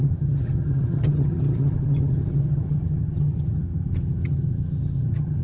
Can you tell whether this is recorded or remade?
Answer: remade